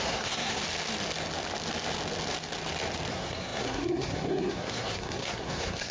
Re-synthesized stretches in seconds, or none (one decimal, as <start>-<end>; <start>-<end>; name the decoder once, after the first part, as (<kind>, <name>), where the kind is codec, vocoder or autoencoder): 0.0-0.6 (codec, SNAC); 3.1-5.9